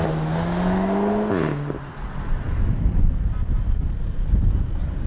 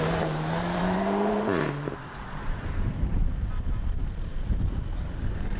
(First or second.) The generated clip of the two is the second